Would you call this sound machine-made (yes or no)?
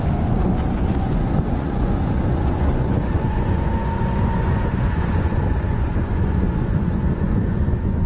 yes